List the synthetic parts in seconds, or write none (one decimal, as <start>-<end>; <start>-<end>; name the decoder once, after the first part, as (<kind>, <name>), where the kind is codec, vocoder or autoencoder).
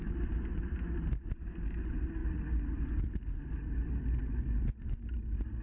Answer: none